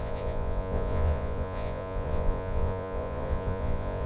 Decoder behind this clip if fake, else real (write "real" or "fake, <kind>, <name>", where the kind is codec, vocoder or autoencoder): fake, vocoder, Vocos